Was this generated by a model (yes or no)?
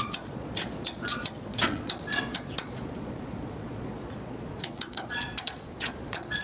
yes